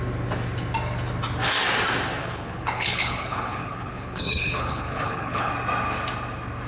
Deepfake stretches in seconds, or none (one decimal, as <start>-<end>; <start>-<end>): 2.2-5.5